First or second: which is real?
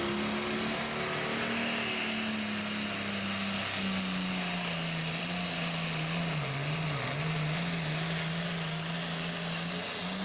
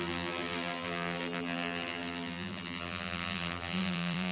first